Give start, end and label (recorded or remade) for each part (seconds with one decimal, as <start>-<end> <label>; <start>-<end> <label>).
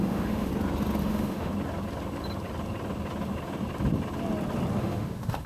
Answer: 0.0-0.5 remade; 0.5-1.0 recorded; 1.0-1.5 remade; 1.5-4.8 recorded; 4.8-5.5 remade